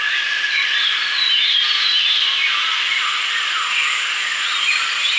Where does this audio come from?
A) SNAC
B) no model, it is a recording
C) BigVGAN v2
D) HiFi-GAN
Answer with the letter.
B